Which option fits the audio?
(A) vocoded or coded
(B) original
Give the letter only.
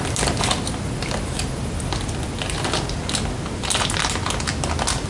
B